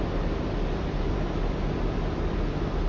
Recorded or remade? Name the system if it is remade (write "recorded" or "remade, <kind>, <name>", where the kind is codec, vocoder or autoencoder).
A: recorded